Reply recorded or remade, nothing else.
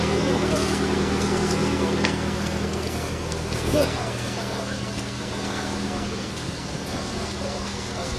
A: remade